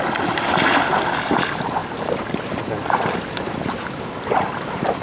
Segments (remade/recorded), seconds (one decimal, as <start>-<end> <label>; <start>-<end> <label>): 0.0-5.0 recorded